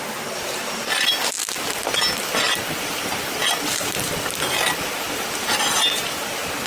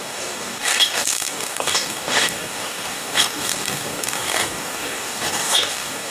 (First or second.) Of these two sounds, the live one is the first